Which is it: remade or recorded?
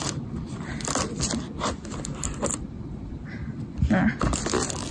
remade